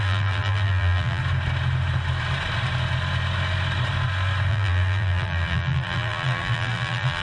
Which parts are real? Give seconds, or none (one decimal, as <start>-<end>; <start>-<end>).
1.2-4.5